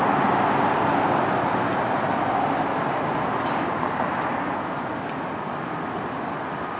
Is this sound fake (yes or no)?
no